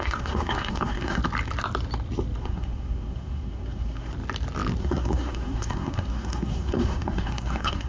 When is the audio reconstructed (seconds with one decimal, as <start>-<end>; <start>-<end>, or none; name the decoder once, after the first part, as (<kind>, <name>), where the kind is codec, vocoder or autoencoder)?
0.0-1.2 (codec, SNAC); 2.4-4.1; 4.8-7.9